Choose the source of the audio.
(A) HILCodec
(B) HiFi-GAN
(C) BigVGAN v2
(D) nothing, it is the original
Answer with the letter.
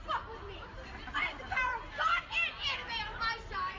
D